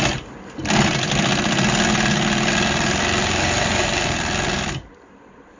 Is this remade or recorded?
recorded